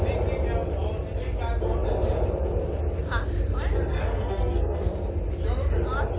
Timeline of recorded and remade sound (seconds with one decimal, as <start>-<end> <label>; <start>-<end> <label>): 0.0-3.9 recorded; 3.9-4.9 remade; 4.9-6.2 recorded